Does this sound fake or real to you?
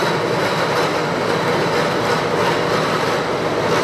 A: real